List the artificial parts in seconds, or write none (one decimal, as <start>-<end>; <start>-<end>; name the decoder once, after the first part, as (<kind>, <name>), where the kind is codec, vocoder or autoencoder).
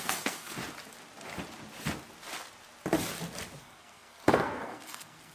0.0-0.6 (codec, SNAC); 3.6-5.3